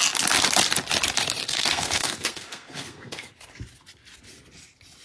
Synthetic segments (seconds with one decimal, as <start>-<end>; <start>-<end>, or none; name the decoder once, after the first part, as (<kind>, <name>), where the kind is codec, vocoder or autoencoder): 1.4-3.3 (codec, SNAC)